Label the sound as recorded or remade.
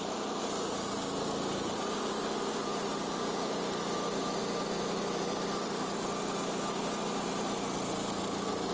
remade